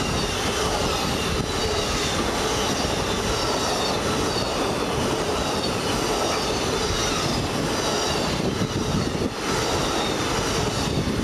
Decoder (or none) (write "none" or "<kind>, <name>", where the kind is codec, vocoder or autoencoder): none